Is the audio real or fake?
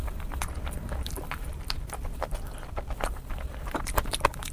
fake